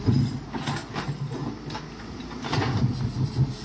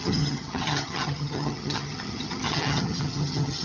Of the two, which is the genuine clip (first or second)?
first